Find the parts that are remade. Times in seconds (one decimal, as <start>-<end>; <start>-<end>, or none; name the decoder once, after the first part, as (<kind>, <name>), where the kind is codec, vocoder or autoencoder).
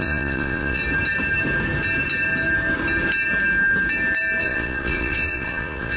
0.0-0.8 (vocoder, Vocos); 4.4-6.0